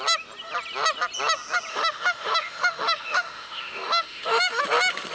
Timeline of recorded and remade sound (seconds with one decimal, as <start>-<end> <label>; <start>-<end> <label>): 0.0-1.7 recorded; 1.7-4.6 remade; 4.6-5.1 recorded